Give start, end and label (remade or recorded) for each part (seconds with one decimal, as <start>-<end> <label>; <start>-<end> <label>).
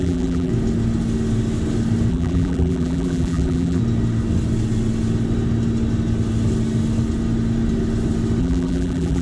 0.0-0.5 remade; 0.5-2.1 recorded; 2.1-3.8 remade; 3.8-8.4 recorded; 8.4-9.2 remade